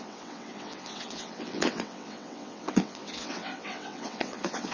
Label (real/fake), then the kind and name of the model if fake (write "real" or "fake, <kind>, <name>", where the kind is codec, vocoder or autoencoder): fake, vocoder, WaveNeXt